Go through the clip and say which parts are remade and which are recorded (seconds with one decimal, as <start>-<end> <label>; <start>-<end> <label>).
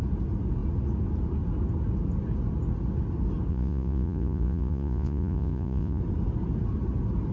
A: 0.0-3.5 recorded; 3.5-6.0 remade; 6.0-7.3 recorded